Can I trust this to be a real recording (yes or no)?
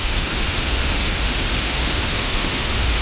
no